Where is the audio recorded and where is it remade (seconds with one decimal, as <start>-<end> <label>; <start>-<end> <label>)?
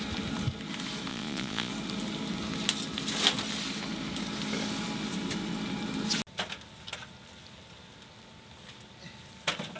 0.0-1.1 recorded; 1.1-1.7 remade; 1.7-9.8 recorded